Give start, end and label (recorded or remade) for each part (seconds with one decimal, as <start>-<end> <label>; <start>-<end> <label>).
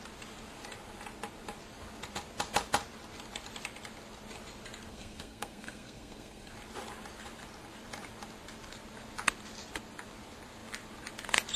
0.0-4.9 recorded; 4.9-6.5 remade; 6.5-11.6 recorded